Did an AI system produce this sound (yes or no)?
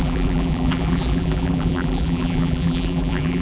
yes